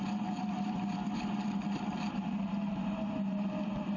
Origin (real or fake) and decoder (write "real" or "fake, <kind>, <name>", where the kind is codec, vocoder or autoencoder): real